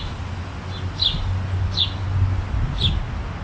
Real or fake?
real